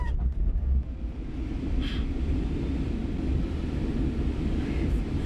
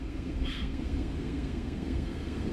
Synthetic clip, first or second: second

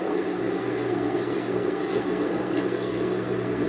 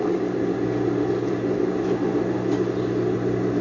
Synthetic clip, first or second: first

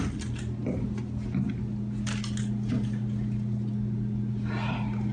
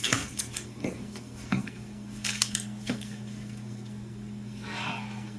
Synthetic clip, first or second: second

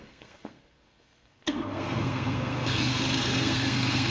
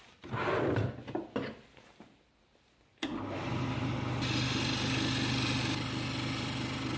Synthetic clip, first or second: first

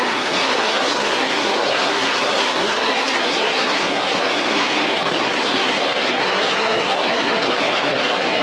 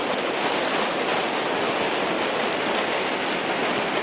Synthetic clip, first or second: first